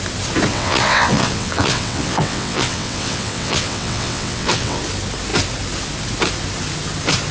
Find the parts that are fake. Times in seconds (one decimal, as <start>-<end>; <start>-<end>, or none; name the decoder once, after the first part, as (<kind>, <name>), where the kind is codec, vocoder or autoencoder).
0.5-4.8 (vocoder, WaveNeXt)